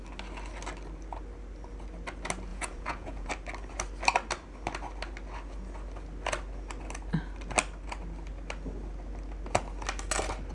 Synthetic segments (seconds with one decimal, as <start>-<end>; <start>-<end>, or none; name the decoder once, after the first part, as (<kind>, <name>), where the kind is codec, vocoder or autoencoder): 2.5-3.3 (vocoder, Vocos)

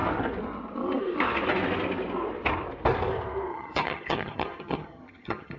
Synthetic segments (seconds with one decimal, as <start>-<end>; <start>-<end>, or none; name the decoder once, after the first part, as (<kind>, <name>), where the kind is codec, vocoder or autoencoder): 3.5-5.6 (vocoder, HiFi-GAN)

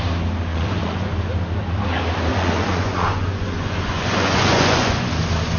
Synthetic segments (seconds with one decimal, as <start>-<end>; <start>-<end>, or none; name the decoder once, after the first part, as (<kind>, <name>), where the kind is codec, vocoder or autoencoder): 0.5-1.1 (vocoder, Vocos); 2.3-5.1

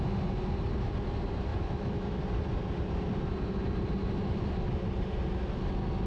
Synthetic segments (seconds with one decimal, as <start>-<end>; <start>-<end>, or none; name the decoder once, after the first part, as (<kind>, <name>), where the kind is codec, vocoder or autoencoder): 1.5-2.2 (autoencoder, DAC-VAE)